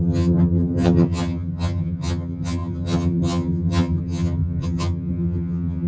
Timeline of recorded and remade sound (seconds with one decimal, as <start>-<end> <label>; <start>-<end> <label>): 0.0-5.9 remade